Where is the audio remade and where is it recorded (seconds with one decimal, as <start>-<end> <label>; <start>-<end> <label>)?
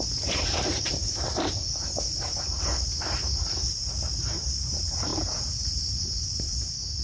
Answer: 0.0-1.0 remade; 1.0-2.9 recorded; 2.9-7.0 remade